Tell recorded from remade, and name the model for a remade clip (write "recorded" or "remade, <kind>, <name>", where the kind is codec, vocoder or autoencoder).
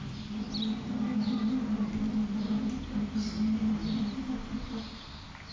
recorded